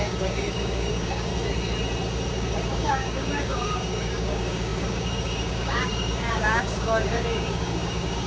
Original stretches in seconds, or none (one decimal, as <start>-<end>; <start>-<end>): 1.3-2.3